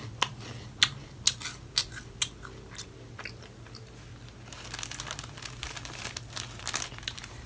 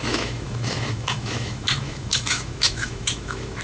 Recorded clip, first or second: first